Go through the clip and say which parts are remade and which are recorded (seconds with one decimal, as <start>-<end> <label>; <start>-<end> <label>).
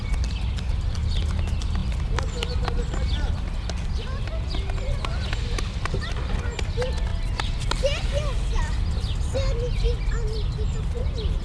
0.0-11.4 recorded